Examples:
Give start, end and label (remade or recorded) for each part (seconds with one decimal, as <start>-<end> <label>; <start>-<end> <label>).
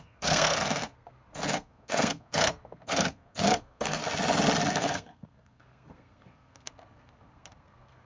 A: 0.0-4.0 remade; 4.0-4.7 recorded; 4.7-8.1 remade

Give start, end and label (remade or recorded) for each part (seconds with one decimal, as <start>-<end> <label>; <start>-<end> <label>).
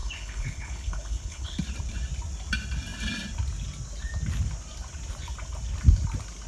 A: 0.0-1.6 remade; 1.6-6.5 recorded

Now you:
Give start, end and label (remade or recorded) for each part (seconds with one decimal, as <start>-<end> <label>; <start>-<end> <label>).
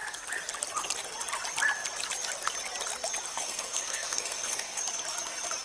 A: 0.0-3.3 recorded; 3.3-4.8 remade; 4.8-5.6 recorded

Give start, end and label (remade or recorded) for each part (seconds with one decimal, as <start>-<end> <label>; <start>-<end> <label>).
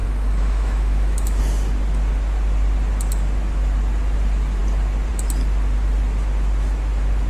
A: 0.0-1.4 remade; 1.4-7.3 recorded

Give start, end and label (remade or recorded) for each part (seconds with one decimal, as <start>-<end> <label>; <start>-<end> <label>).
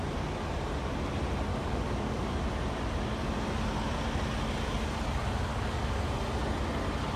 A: 0.0-1.5 recorded; 1.5-2.2 remade; 2.2-5.5 recorded; 5.5-6.0 remade; 6.0-7.2 recorded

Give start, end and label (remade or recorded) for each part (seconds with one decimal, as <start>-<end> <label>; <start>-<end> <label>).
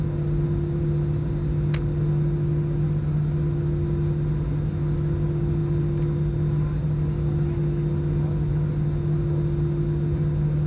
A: 0.0-10.7 recorded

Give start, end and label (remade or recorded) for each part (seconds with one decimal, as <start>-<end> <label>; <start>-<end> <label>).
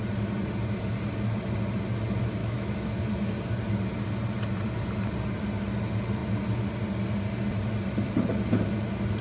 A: 0.0-2.4 recorded; 2.4-3.0 remade; 3.0-9.2 recorded